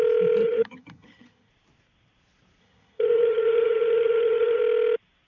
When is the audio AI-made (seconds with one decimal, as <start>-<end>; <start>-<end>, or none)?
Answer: 0.4-1.5; 2.6-4.6